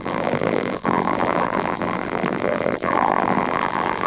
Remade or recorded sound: remade